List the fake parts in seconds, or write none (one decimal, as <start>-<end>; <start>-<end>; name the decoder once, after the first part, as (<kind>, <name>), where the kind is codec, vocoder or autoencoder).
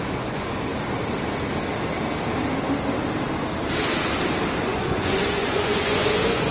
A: 0.0-0.7 (vocoder, Vocos); 4.6-6.5